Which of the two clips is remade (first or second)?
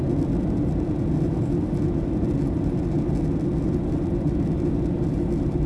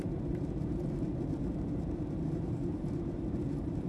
second